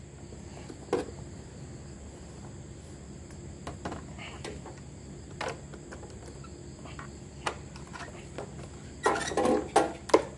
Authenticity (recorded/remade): recorded